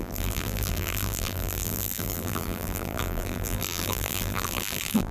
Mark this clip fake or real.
fake